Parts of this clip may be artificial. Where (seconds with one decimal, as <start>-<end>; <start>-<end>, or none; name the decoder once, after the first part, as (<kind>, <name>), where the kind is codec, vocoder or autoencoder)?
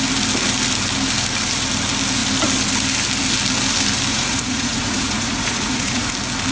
4.1-6.1 (vocoder, Vocos)